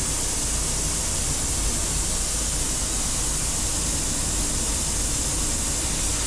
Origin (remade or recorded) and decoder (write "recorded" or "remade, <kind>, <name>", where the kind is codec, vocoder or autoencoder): recorded